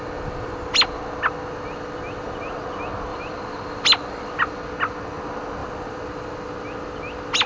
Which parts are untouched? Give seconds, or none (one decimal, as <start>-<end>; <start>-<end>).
0.0-3.1; 4.7-7.5